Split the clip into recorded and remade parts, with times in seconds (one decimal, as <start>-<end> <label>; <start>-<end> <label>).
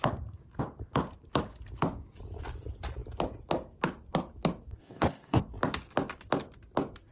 0.0-4.8 recorded; 4.8-5.4 remade; 5.4-7.1 recorded